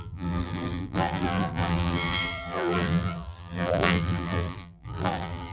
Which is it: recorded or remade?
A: remade